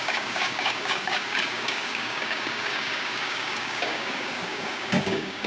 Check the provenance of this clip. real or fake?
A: fake